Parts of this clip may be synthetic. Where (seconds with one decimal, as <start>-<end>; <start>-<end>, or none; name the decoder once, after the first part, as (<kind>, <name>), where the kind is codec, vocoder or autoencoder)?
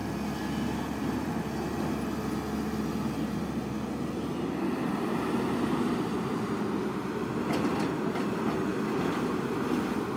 8.7-9.6 (vocoder, BigVGAN v2)